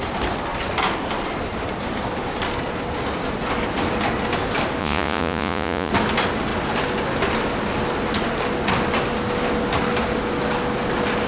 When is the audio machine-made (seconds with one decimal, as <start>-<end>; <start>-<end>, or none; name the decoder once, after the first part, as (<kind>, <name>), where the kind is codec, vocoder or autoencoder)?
4.8-5.9 (vocoder, Vocos)